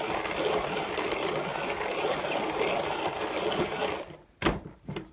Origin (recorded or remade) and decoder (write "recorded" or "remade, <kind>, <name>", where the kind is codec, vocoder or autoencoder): recorded